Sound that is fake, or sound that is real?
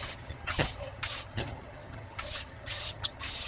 fake